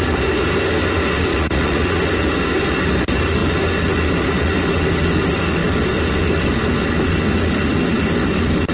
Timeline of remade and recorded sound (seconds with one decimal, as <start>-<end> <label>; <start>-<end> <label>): 0.0-1.3 recorded; 1.3-2.0 remade; 2.0-8.7 recorded